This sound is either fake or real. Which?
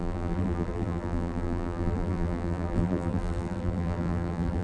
fake